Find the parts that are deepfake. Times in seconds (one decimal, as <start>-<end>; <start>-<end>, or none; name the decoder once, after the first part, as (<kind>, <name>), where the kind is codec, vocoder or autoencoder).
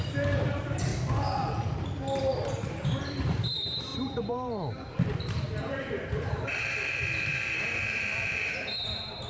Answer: 0.0-0.9 (vocoder, BigVGAN v2); 2.2-9.3